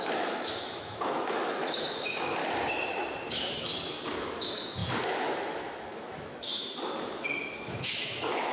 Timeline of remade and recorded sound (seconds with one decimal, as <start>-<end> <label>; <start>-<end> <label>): 0.0-2.4 remade; 2.4-3.3 recorded; 3.3-8.5 remade